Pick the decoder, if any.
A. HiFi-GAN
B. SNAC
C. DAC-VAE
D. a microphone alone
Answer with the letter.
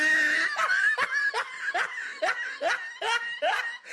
D